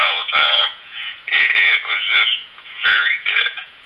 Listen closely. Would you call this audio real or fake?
fake